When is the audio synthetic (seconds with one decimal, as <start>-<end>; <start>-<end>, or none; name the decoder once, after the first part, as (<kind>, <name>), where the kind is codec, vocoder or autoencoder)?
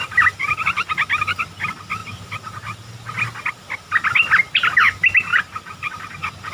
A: 0.0-0.9 (vocoder, BigVGAN v2); 5.3-6.5